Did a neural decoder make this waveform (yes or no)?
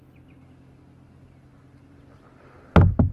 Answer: no